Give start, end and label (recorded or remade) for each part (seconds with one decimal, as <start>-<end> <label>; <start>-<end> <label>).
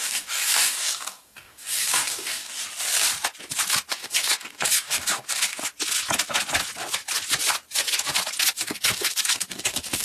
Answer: 0.0-2.6 remade; 2.6-3.9 recorded; 3.9-5.6 remade; 5.6-8.5 recorded; 8.5-10.0 remade